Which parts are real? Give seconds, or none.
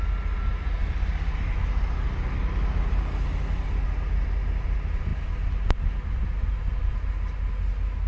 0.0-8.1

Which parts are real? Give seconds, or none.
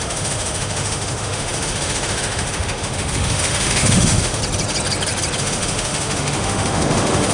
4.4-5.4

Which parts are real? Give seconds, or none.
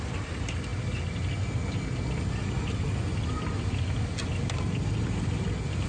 0.0-5.9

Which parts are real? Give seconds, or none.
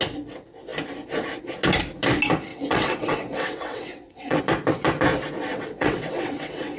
0.0-2.5; 4.4-5.5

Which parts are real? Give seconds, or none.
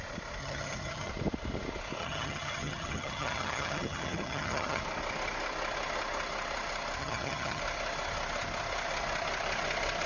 0.0-0.4; 1.1-2.0; 4.8-7.0; 7.6-10.1